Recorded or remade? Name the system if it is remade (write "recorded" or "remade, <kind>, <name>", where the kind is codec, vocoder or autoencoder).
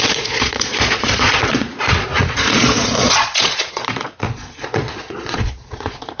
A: remade, vocoder, Vocos